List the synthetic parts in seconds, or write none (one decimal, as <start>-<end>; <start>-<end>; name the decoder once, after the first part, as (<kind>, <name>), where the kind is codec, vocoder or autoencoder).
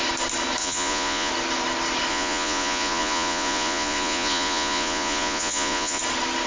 0.6-1.3 (vocoder, Vocos); 2.1-6.0